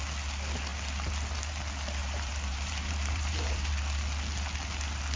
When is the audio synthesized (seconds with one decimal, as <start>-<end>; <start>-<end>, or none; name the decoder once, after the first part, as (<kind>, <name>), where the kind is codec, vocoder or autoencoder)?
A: 2.0-3.7 (vocoder, BigVGAN v2)